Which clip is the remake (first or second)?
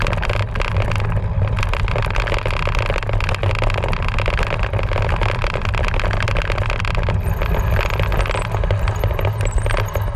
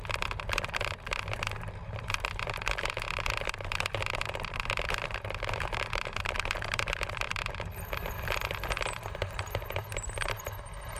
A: second